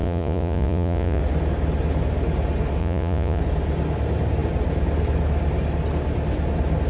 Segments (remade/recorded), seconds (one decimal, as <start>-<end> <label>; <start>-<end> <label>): 0.0-1.2 remade; 1.2-2.8 recorded; 2.8-3.4 remade; 3.4-6.9 recorded